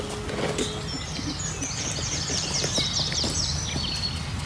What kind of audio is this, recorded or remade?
recorded